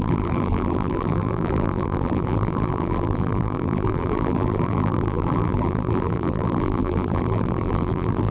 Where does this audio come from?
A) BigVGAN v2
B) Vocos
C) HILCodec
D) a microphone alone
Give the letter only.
A